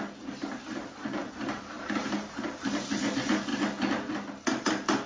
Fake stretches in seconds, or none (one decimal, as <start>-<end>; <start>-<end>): 1.2-2.9